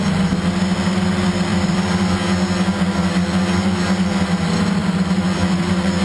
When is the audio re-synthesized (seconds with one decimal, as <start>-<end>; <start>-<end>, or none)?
1.5-2.1; 4.8-6.0